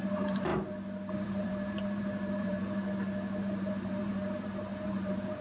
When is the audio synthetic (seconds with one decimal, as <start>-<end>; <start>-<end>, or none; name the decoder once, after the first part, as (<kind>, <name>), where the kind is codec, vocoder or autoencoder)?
0.0-0.5 (vocoder, BigVGAN v2); 1.1-2.8; 3.4-5.4